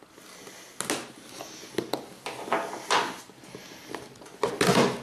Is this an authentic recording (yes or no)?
yes